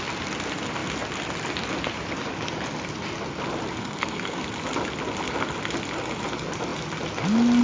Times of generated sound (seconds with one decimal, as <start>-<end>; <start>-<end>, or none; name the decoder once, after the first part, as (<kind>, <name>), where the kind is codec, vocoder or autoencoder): 3.8-4.4 (codec, SNAC)